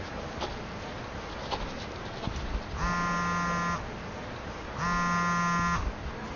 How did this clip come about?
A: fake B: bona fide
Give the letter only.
B